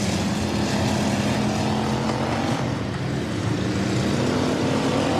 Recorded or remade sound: recorded